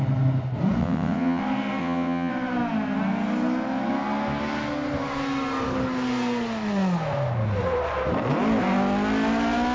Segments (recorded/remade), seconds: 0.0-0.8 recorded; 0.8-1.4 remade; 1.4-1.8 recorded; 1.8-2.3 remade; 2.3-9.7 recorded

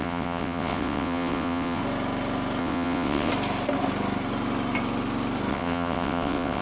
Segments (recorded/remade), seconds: 0.0-1.8 remade; 1.8-2.6 recorded; 2.6-3.3 remade; 3.3-5.5 recorded; 5.5-6.6 remade

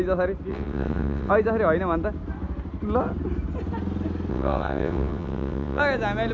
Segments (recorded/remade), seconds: 0.0-0.5 recorded; 0.5-1.3 remade; 1.3-4.3 recorded; 4.3-5.8 remade; 5.8-6.3 recorded

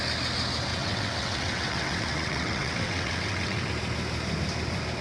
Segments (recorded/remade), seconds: 0.0-0.7 recorded; 0.7-3.7 remade; 3.7-5.0 recorded

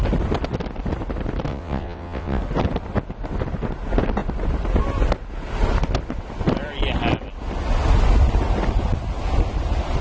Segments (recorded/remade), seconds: 0.0-1.5 recorded; 1.5-2.4 remade; 2.4-10.0 recorded